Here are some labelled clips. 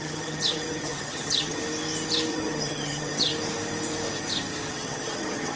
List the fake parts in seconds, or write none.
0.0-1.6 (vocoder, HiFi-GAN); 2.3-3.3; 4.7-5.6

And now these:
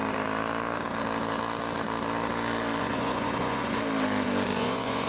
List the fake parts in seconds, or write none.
2.8-3.8 (vocoder, Vocos); 4.5-5.1

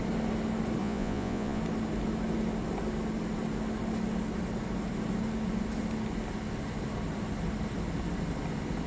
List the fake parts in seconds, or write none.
0.8-1.6 (vocoder, Vocos)